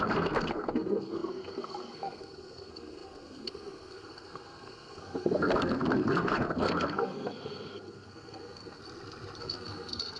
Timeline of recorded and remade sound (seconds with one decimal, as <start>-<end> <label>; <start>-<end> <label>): 0.0-8.8 remade; 8.8-9.4 recorded; 9.4-10.2 remade